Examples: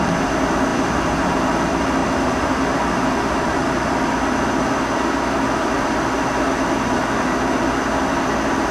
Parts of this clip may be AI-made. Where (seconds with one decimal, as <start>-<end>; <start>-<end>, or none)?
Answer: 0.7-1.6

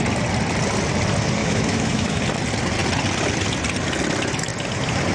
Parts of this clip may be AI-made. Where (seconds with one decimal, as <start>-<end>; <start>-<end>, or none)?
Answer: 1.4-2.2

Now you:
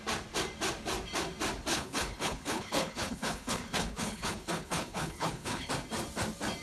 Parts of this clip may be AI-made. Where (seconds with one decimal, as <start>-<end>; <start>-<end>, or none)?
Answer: 1.7-5.7